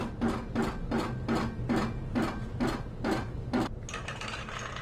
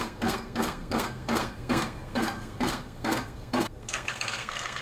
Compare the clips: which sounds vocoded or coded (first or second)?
second